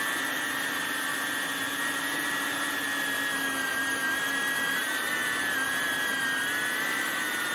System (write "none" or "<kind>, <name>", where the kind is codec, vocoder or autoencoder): none